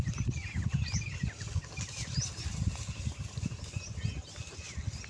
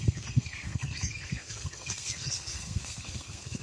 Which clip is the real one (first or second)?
first